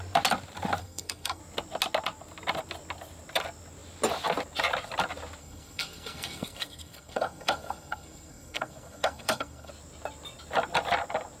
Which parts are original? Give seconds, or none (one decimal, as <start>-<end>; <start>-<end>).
0.0-0.8; 1.4-5.4; 9.7-11.4